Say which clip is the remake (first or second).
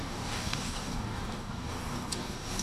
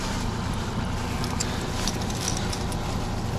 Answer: first